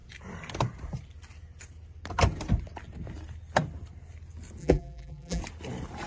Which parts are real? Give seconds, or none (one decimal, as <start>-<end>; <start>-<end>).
0.0-4.6; 5.4-6.1